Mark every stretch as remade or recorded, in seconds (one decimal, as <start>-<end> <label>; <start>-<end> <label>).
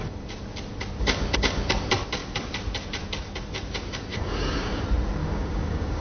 0.0-4.1 recorded; 4.1-4.8 remade; 4.8-5.2 recorded; 5.2-6.0 remade